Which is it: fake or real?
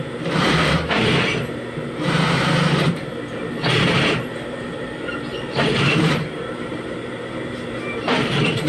fake